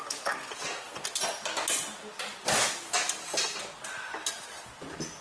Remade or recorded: recorded